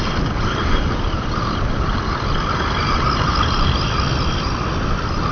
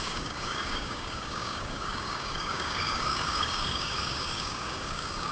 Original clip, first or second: first